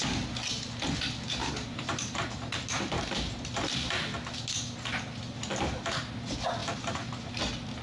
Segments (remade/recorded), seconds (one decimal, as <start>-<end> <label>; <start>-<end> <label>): 0.0-1.4 recorded; 1.4-3.7 remade; 3.7-5.5 recorded; 5.5-6.1 remade; 6.1-6.6 recorded; 6.6-7.3 remade; 7.3-7.8 recorded